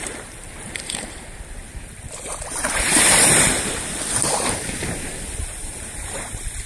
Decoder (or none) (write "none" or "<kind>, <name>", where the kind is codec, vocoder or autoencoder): vocoder, BigVGAN v2